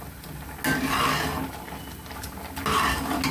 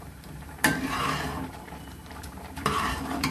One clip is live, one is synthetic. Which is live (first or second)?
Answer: first